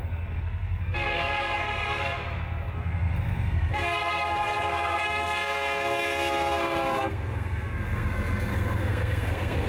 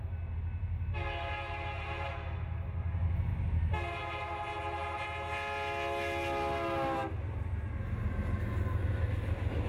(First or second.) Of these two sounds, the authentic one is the second